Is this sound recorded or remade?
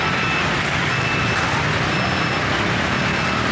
recorded